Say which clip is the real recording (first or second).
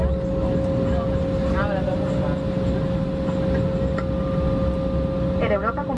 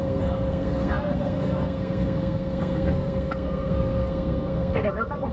first